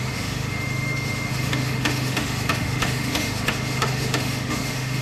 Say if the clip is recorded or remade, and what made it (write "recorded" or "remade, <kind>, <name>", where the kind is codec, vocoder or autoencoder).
remade, autoencoder, DAC-VAE